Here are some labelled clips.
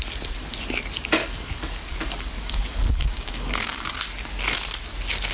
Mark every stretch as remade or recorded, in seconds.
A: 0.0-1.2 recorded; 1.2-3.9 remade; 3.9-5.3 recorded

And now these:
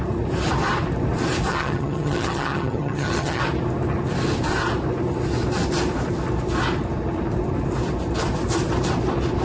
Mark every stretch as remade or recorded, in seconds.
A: 0.0-1.5 recorded; 1.5-3.4 remade; 3.4-9.4 recorded

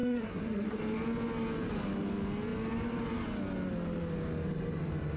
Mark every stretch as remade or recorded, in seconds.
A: 0.0-0.8 remade; 0.8-5.2 recorded

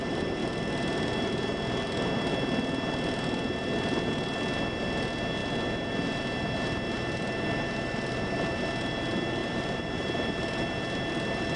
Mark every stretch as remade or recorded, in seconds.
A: 0.0-9.4 recorded; 9.4-10.6 remade; 10.6-11.6 recorded

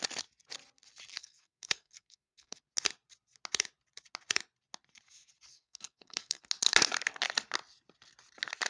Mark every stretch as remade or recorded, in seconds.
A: 0.0-1.1 recorded; 1.1-2.6 remade; 2.6-5.5 recorded; 5.5-6.4 remade; 6.4-8.7 recorded

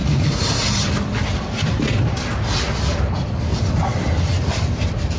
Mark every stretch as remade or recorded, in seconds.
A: 0.0-3.5 recorded; 3.5-4.8 remade; 4.8-5.2 recorded